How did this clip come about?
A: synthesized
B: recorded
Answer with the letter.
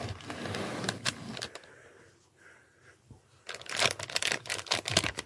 B